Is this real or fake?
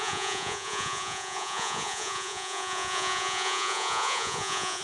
fake